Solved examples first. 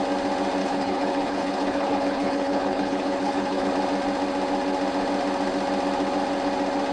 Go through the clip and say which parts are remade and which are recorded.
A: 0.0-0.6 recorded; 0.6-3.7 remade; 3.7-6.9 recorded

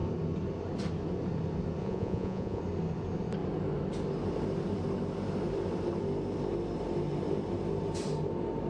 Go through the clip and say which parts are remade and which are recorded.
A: 0.0-1.8 recorded; 1.8-2.6 remade; 2.6-8.7 recorded

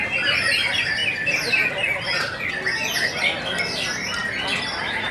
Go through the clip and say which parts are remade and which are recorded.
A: 0.0-5.1 recorded

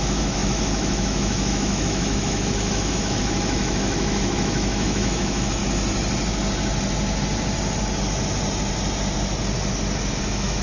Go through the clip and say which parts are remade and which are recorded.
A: 0.0-5.6 remade; 5.6-10.2 recorded; 10.2-10.6 remade

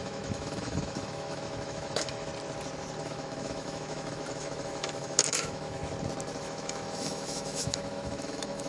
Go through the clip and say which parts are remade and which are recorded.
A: 0.0-2.3 remade; 2.3-3.0 recorded; 3.0-5.8 remade; 5.8-6.4 recorded; 6.4-8.7 remade

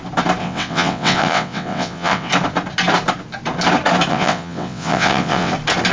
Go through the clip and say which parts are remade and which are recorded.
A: 0.0-0.4 recorded; 0.4-2.3 remade; 2.3-4.1 recorded; 4.1-5.5 remade; 5.5-5.9 recorded